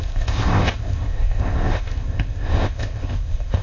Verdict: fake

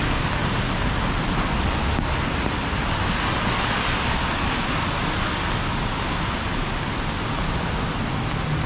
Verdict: real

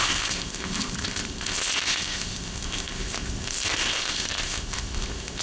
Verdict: fake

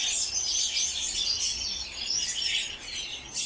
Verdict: real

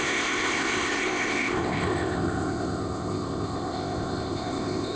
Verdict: fake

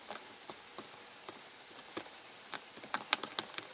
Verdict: real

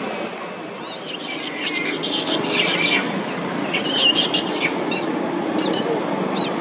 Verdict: real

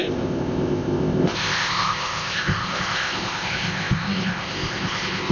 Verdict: fake